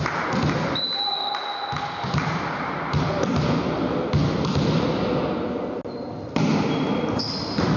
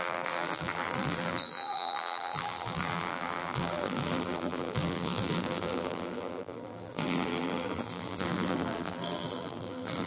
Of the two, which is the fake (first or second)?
second